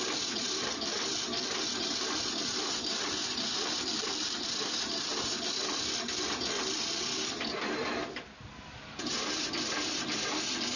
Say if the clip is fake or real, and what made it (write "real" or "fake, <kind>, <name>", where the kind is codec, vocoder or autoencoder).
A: fake, vocoder, BigVGAN v2